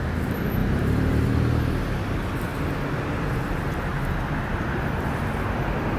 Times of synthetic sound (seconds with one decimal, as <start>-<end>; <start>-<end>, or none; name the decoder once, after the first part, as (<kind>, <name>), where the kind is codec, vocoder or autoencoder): 0.6-1.1 (vocoder, BigVGAN v2)